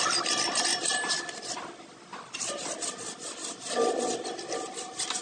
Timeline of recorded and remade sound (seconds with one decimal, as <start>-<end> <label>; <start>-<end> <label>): 0.0-5.2 recorded

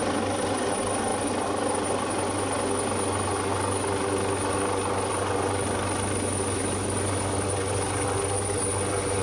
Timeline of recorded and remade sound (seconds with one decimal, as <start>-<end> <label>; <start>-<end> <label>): 0.0-9.2 recorded

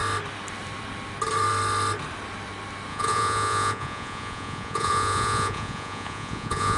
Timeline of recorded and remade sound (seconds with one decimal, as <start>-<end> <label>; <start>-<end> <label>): 0.0-2.9 recorded; 2.9-6.8 remade

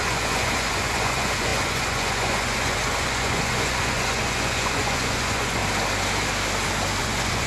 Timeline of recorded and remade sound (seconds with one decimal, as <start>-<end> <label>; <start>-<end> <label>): 0.0-5.6 remade; 5.6-7.0 recorded; 7.0-7.5 remade

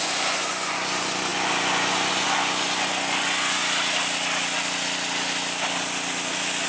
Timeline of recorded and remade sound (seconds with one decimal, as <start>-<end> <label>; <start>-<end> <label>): 0.0-3.6 remade; 3.6-6.7 recorded

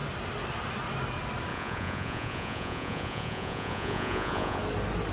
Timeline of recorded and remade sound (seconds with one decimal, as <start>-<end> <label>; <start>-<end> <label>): 0.0-1.5 recorded; 1.5-4.6 remade; 4.6-5.1 recorded